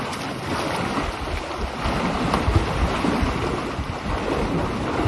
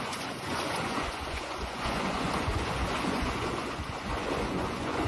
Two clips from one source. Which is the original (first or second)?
first